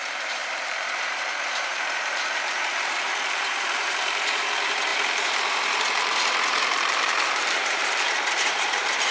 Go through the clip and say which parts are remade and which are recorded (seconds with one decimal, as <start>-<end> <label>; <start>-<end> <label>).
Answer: 0.0-9.1 remade